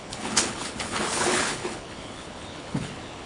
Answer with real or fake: fake